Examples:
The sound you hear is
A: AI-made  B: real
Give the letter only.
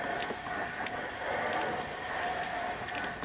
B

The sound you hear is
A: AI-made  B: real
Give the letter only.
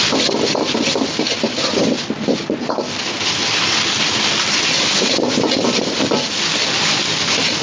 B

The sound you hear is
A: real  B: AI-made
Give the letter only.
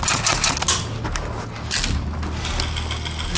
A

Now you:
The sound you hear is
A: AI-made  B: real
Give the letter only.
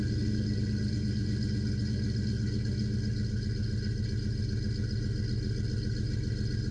B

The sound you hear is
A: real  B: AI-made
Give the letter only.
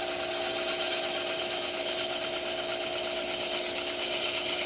A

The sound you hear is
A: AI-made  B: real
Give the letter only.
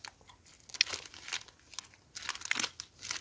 B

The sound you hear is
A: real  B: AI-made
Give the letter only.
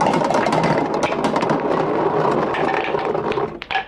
A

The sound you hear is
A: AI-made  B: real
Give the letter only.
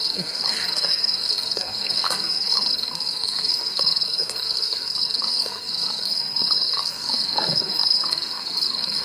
A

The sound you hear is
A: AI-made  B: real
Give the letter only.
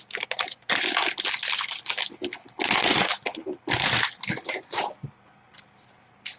B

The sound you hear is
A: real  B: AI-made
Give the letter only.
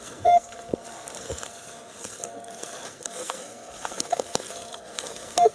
B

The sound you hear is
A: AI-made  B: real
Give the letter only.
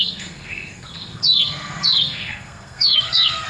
A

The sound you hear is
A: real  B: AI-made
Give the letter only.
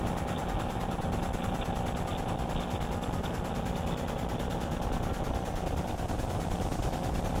A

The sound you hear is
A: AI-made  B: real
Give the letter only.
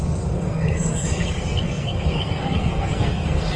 A